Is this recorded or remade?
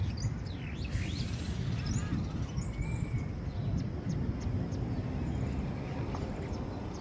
recorded